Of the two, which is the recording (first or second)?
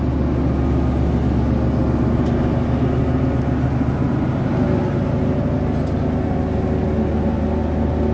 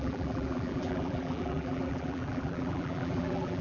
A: first